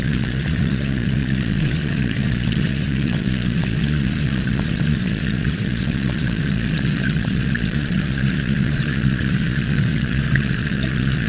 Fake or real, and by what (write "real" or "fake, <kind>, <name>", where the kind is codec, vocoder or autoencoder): fake, vocoder, Vocos